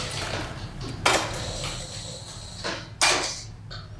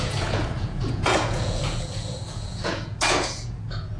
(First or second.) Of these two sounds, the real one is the first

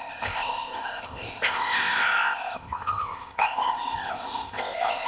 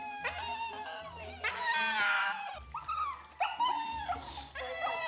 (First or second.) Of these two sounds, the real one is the second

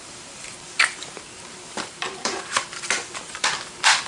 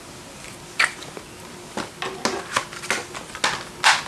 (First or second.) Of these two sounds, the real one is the second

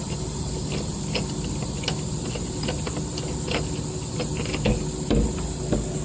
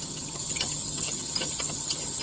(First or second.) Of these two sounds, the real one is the first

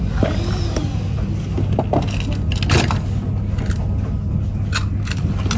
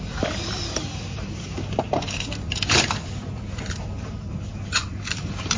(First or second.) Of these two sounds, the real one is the first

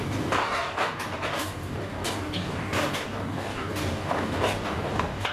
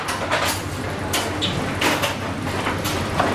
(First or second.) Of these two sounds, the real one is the second